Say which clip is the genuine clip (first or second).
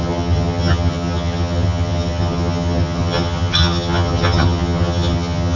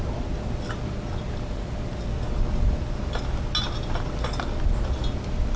second